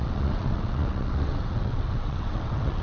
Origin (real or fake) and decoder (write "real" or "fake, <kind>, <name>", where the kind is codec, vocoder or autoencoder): fake, vocoder, WaveNeXt